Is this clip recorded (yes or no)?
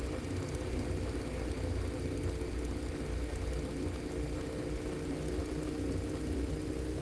yes